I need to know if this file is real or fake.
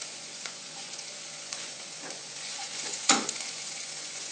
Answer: fake